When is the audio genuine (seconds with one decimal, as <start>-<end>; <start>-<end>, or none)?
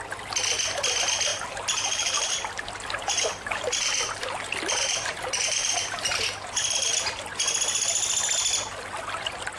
0.0-1.3; 2.3-3.5; 6.1-9.6